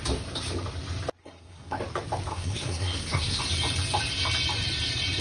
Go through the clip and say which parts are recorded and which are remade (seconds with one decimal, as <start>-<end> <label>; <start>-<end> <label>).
0.0-1.2 recorded; 1.2-1.8 remade; 1.8-2.3 recorded; 2.3-3.4 remade; 3.4-5.2 recorded